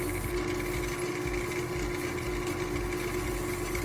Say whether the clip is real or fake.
real